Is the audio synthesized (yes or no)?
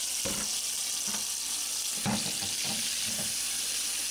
no